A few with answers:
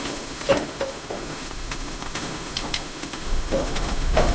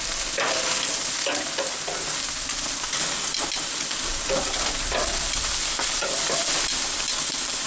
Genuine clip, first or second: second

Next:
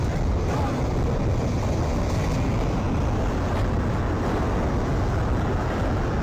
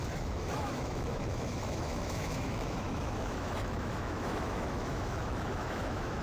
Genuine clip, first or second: first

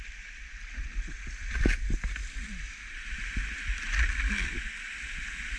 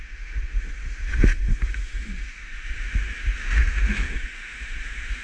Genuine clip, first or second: first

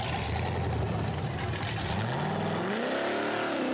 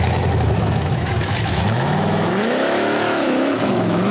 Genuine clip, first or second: first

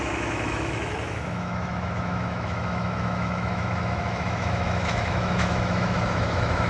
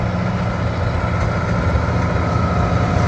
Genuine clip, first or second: second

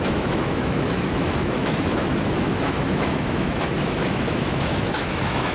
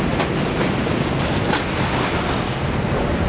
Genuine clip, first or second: second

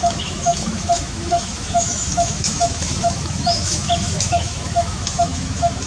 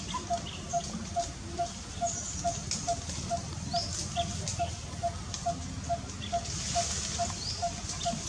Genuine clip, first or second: second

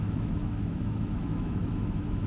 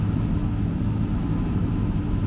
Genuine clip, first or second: second